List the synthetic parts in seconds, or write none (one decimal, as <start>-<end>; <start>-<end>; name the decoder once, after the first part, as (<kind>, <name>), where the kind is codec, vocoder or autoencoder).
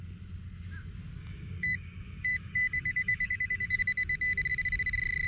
1.2-3.8 (codec, DAC)